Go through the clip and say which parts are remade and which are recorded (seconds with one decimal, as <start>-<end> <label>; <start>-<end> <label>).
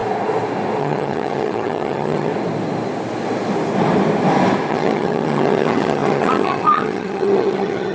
0.0-0.8 recorded; 0.8-2.3 remade; 2.3-4.7 recorded; 4.7-7.9 remade